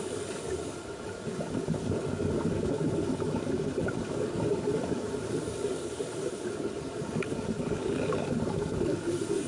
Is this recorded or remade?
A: remade